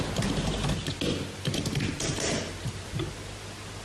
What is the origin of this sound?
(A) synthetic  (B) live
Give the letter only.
B